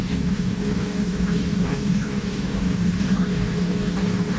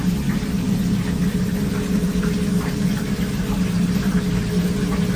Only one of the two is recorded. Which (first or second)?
second